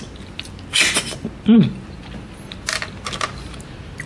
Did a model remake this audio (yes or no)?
no